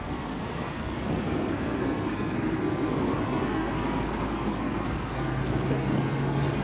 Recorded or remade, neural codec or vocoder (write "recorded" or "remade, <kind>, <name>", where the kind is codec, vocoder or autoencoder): remade, codec, SNAC